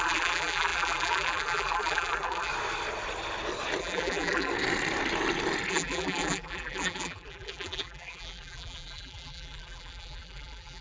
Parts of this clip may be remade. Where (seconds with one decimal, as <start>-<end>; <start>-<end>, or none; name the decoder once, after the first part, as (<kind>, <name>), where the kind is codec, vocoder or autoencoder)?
0.0-2.5 (vocoder, BigVGAN v2); 3.8-4.5; 5.7-10.8